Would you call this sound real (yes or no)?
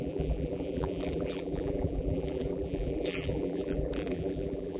no